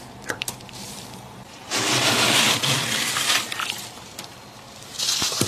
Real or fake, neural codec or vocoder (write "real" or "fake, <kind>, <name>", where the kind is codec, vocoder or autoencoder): fake, vocoder, BigVGAN v2